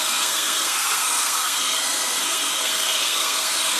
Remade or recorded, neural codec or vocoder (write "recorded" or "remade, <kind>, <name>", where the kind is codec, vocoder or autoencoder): remade, codec, SNAC